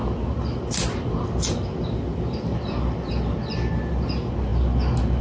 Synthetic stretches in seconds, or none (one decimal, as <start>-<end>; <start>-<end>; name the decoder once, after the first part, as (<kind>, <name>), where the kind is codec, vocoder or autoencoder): none